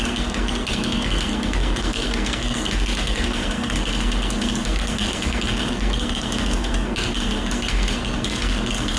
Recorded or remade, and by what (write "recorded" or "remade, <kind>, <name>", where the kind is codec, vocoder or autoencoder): remade, codec, SNAC